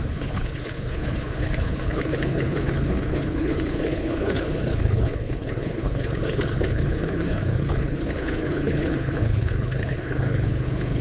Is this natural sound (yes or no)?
no